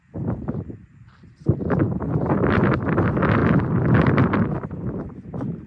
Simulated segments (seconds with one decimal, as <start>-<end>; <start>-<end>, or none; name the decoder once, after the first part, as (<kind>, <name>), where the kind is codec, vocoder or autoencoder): none